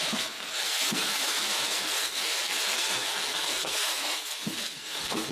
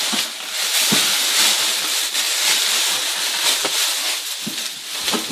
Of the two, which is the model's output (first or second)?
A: first